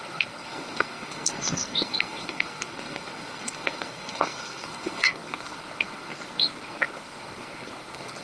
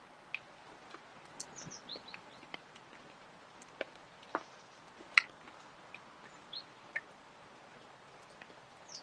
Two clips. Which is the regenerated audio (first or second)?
first